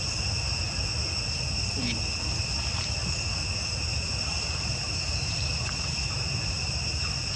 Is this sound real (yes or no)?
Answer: yes